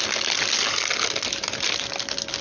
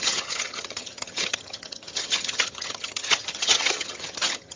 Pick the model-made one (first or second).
second